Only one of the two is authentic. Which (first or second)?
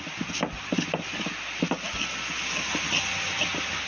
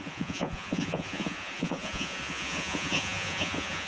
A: first